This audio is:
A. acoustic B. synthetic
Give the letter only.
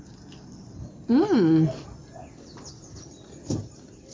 A